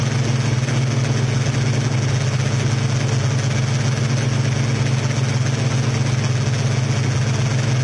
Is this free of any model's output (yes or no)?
yes